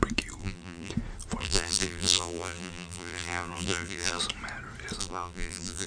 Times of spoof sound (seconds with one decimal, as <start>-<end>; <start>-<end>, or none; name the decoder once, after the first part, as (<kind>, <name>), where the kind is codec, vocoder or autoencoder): 0.4-0.9 (vocoder, BigVGAN v2); 1.4-4.2; 5.0-5.9